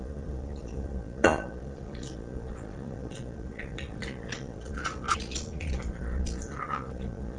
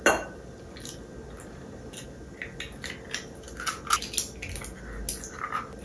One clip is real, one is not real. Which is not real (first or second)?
first